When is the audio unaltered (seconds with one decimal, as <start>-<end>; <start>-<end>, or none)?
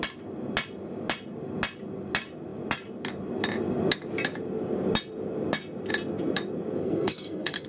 0.0-6.8